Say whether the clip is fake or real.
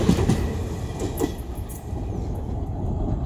real